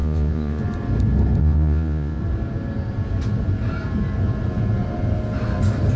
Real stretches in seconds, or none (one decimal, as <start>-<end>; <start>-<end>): 0.6-1.4; 2.2-6.0